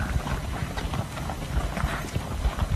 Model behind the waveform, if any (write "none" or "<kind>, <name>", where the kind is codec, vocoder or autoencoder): none